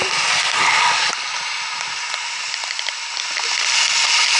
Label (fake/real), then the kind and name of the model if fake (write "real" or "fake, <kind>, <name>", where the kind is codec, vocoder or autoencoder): real